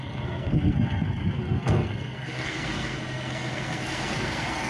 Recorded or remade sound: remade